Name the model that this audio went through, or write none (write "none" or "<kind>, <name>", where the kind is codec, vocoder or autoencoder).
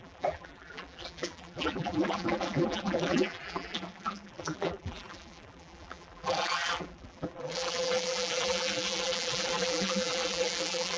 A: vocoder, BigVGAN v2